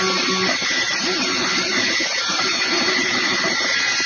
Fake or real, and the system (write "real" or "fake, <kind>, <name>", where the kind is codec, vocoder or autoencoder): real